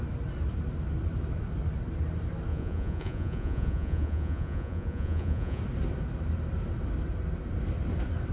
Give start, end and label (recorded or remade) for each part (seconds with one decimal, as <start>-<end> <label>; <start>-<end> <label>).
0.0-2.5 recorded; 2.5-5.6 remade; 5.6-8.3 recorded